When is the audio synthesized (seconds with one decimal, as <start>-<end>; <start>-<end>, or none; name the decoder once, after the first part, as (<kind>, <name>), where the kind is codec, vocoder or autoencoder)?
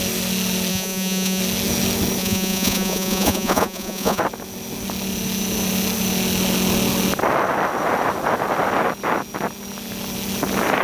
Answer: 0.7-1.4 (vocoder, Vocos); 2.2-4.2